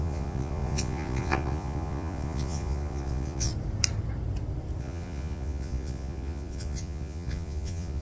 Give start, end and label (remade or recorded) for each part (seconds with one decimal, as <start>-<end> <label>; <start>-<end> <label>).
0.0-3.5 remade; 3.5-4.8 recorded; 4.8-8.0 remade